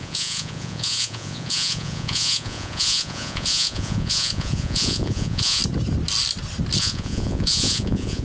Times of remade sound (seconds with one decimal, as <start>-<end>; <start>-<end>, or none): 0.0-5.6; 6.8-8.2